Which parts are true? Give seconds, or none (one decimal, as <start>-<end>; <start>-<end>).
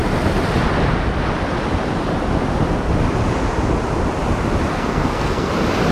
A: 0.0-4.7; 5.5-5.9